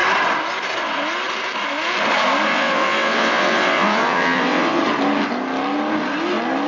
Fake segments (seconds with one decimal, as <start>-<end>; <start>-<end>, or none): 2.5-4.8